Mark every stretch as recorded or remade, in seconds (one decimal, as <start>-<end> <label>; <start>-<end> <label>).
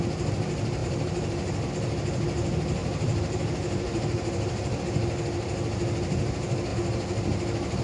0.0-0.8 recorded; 0.8-1.7 remade; 1.7-2.8 recorded; 2.8-4.8 remade; 4.8-7.8 recorded